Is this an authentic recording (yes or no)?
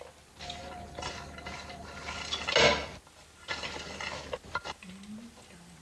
yes